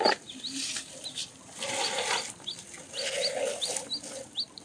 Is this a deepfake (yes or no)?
no